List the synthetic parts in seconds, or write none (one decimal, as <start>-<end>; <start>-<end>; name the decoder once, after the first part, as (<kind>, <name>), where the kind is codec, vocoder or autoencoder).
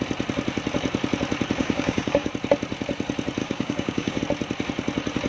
1.6-2.3 (codec, DAC); 3.4-4.2